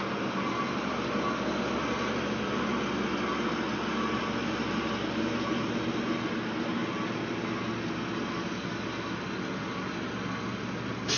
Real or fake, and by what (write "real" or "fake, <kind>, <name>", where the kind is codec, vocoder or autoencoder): real